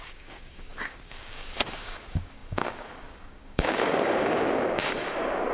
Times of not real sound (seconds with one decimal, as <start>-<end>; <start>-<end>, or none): 0.0-5.5

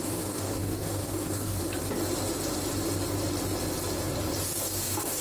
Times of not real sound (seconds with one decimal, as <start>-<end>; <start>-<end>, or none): 0.0-1.6; 4.6-5.2

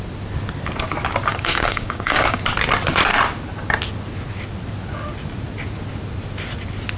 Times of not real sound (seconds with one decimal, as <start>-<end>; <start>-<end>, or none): 1.3-2.4

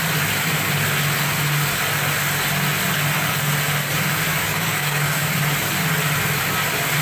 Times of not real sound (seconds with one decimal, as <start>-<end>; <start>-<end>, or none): 4.3-5.4